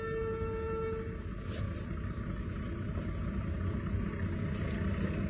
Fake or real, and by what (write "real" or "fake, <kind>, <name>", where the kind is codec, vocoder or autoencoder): real